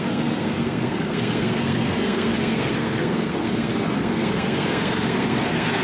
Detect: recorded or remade remade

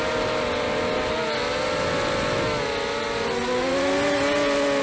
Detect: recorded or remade recorded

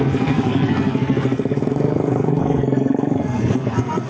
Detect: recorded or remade remade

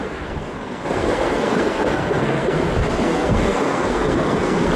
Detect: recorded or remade remade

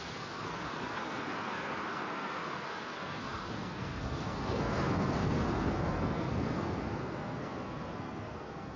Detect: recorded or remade remade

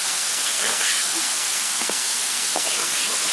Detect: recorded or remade remade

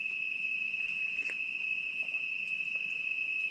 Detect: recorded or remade recorded